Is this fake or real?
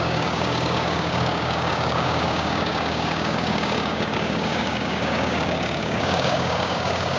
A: fake